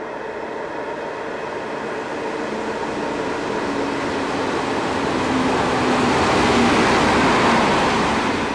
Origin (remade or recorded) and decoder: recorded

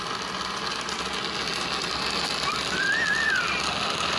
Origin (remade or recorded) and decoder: recorded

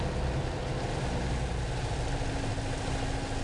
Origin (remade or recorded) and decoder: recorded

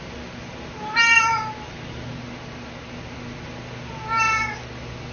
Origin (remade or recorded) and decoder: recorded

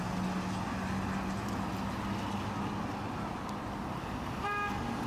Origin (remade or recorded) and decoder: recorded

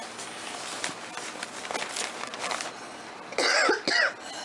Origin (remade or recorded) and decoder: recorded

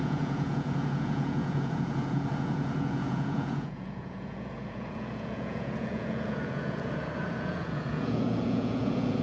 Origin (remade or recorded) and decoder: remade, vocoder, Vocos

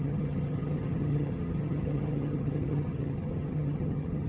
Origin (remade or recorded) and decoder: remade, vocoder, HiFi-GAN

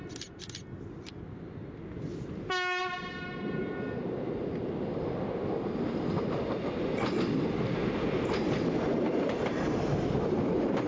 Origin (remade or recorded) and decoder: recorded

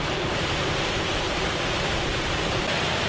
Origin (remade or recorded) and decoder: recorded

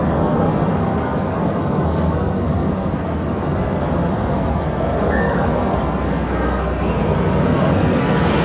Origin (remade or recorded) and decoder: remade, codec, SNAC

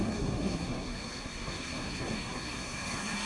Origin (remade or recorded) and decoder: remade, codec, SNAC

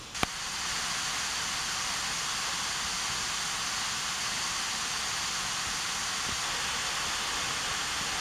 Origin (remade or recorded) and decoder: recorded